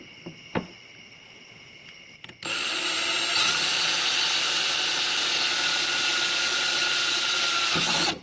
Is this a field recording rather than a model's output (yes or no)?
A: yes